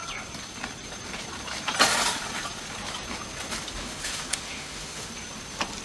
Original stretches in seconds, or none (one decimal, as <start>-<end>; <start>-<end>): 0.0-3.8; 5.1-5.8